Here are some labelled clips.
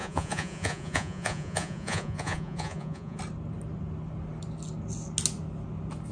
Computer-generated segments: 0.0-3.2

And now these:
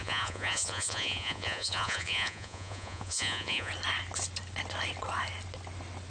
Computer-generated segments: 0.0-3.7

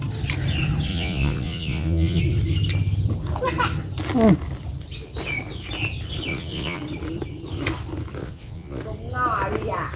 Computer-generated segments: 0.9-2.2; 6.3-6.8; 8.2-8.8

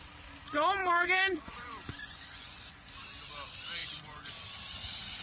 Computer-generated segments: 0.8-2.9; 3.8-4.3

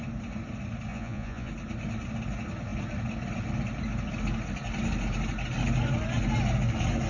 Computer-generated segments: 0.9-1.5

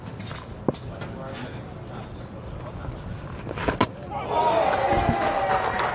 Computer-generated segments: none

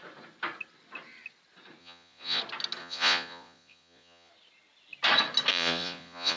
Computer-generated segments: 1.8-2.4; 2.8-4.3; 5.5-6.4

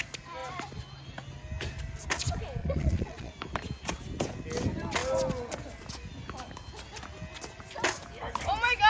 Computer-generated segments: 2.6-3.3